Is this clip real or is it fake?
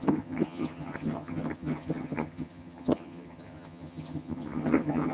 fake